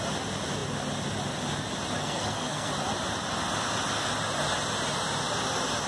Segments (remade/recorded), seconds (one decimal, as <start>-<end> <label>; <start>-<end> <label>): 0.0-2.0 recorded; 2.0-2.7 remade; 2.7-5.9 recorded